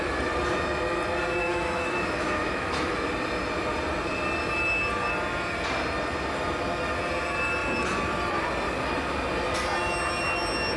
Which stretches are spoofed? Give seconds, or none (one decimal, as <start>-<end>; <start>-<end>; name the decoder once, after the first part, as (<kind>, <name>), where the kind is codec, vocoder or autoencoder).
1.4-2.9 (autoencoder, DAC-VAE)

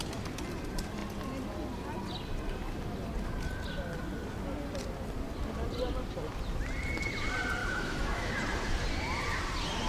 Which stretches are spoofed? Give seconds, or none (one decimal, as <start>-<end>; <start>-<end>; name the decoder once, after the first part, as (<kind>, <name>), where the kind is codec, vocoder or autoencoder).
7.6-8.3 (autoencoder, DAC-VAE)

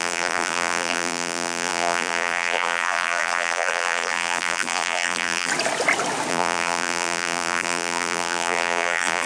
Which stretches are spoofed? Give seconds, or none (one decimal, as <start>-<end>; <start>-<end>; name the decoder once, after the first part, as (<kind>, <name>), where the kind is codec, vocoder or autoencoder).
0.0-5.5 (vocoder, BigVGAN v2); 6.3-9.3

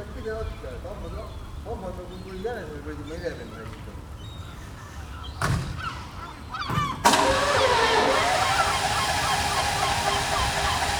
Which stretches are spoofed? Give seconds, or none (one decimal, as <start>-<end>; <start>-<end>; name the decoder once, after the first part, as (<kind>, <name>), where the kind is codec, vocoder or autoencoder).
4.4-5.8 (codec, DAC)

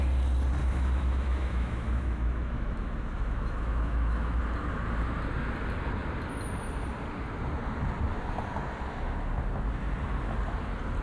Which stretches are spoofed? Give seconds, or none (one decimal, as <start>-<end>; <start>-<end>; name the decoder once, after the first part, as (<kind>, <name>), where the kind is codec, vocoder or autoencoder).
0.6-4.4 (autoencoder, DAC-VAE)

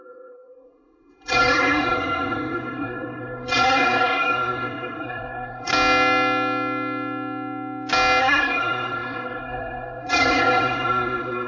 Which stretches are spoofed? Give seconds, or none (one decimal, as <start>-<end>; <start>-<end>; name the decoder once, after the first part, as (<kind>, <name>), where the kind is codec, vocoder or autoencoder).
0.0-5.7 (codec, SNAC); 8.2-11.5